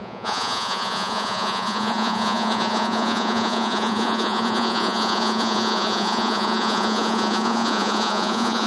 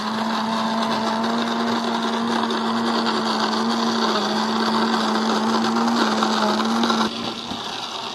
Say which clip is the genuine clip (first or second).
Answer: second